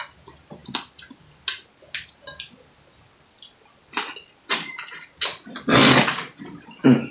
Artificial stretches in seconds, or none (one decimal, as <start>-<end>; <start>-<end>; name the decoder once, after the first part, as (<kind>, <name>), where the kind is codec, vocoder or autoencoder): none